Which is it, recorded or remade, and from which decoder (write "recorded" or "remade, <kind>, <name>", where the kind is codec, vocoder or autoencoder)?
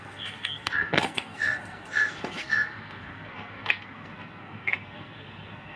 remade, codec, SNAC